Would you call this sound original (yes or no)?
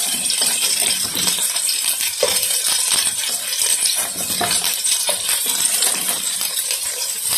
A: no